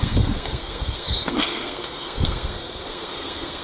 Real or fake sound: fake